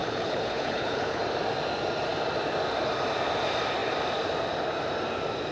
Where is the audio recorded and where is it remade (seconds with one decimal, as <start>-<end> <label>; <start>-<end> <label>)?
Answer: 0.0-1.2 remade; 1.2-5.5 recorded